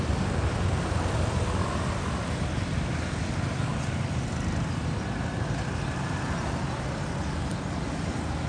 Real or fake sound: real